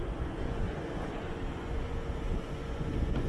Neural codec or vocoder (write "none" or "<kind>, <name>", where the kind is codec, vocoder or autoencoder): vocoder, Vocos